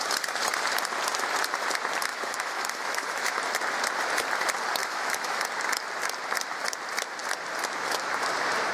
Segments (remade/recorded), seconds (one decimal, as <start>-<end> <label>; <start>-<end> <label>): 0.0-2.1 recorded; 2.1-3.4 remade; 3.4-4.8 recorded; 4.8-5.4 remade; 5.4-8.7 recorded